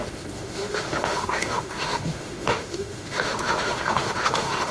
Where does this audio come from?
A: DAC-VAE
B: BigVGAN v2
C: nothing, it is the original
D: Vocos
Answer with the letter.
A